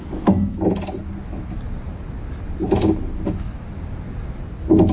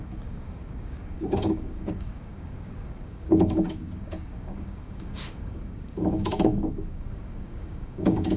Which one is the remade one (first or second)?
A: second